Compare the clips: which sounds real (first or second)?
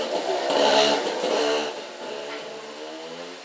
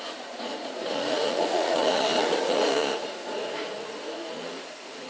first